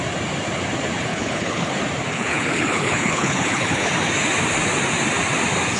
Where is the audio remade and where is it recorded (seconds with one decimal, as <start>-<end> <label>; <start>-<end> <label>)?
0.0-1.1 recorded; 1.1-1.7 remade; 1.7-2.1 recorded; 2.1-3.9 remade; 3.9-5.8 recorded